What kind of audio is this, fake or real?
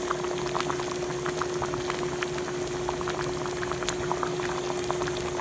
real